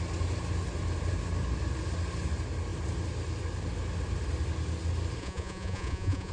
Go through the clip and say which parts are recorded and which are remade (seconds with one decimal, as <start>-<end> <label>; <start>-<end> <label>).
0.0-5.2 recorded; 5.2-6.3 remade